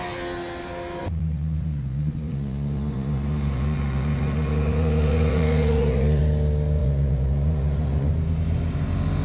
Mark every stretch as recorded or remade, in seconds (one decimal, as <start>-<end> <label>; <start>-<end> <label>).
0.0-1.0 recorded; 1.0-6.2 remade; 6.2-6.8 recorded; 6.8-8.1 remade; 8.1-9.2 recorded